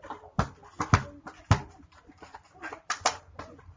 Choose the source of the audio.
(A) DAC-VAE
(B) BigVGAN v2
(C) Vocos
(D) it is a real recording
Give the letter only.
B